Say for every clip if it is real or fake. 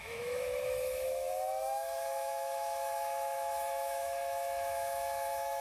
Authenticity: fake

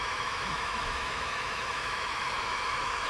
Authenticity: fake